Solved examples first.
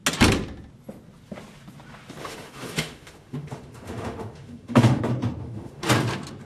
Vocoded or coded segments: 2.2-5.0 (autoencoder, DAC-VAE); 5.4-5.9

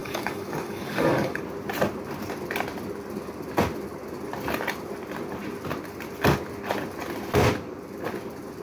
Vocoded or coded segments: 0.0-1.4 (codec, DAC)

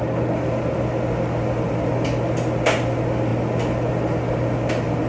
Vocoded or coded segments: none

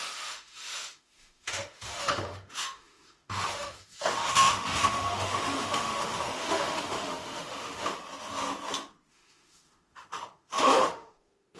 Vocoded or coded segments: 0.0-8.0 (autoencoder, DAC-VAE); 9.1-11.6

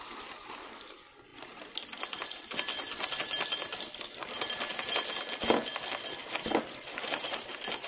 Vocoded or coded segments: 6.2-7.5 (vocoder, BigVGAN v2)